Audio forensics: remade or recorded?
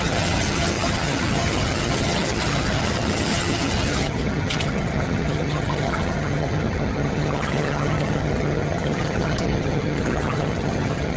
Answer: remade